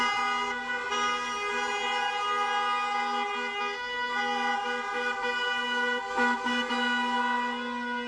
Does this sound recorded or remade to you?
recorded